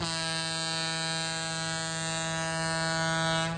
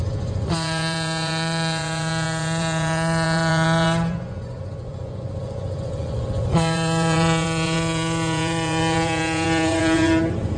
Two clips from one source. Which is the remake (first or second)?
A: second